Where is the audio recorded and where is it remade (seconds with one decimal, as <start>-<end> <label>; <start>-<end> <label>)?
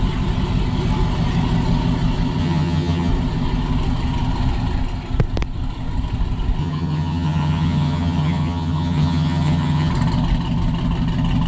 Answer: 0.0-2.4 recorded; 2.4-3.1 remade; 3.1-6.6 recorded; 6.6-9.9 remade; 9.9-11.5 recorded